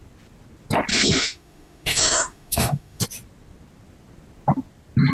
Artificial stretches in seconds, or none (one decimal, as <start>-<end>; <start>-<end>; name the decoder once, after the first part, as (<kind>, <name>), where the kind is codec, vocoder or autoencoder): 0.9-3.0 (autoencoder, DAC-VAE)